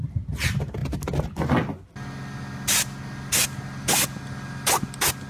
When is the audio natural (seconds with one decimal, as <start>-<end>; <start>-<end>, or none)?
0.0-5.3